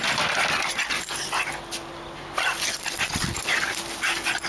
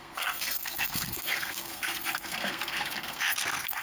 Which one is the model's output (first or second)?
second